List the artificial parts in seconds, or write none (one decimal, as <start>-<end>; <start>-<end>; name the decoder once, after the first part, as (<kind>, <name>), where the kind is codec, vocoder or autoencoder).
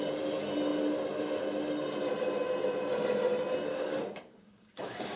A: 3.7-5.2 (codec, DAC)